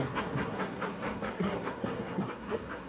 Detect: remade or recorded remade